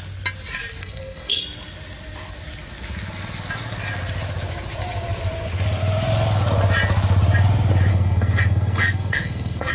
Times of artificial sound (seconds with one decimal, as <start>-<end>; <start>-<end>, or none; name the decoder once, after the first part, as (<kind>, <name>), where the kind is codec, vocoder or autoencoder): 0.8-1.4 (codec, SNAC); 7.9-9.7

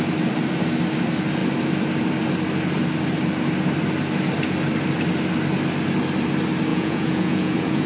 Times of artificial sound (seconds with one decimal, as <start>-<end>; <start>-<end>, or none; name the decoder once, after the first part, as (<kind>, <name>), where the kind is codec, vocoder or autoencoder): 6.7-7.9 (vocoder, Vocos)

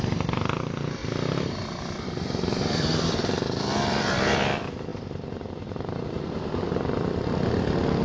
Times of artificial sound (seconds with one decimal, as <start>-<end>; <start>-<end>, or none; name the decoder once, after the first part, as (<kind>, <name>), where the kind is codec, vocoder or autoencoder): 1.0-4.3 (vocoder, BigVGAN v2); 4.9-5.5

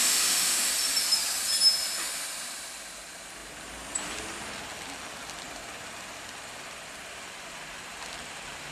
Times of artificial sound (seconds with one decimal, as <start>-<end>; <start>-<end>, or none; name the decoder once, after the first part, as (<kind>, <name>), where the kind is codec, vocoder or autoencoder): 0.0-0.7 (autoencoder, DAC-VAE)

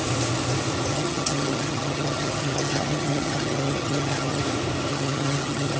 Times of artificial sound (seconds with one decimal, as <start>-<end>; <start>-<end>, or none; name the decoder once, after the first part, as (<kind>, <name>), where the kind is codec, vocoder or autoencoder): 0.9-4.4 (vocoder, HiFi-GAN); 4.9-5.8

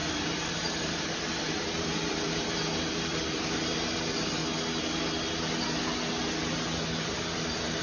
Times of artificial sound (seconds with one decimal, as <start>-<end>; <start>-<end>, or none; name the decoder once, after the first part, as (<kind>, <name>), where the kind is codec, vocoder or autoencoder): 0.0-4.4 (vocoder, BigVGAN v2); 7.0-7.8

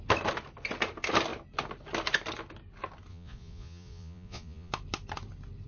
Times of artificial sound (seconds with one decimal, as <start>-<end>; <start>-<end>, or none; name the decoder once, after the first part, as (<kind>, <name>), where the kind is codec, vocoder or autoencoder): 3.1-4.7 (vocoder, Vocos)